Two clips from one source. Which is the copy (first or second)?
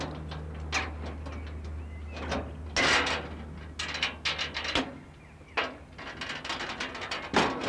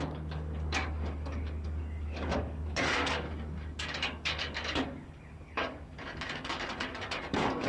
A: second